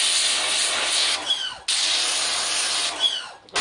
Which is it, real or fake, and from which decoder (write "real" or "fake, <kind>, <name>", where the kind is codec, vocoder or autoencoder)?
real